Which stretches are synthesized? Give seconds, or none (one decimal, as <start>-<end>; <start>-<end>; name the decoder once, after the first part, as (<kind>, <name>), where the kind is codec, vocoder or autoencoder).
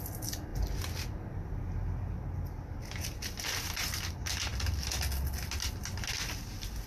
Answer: none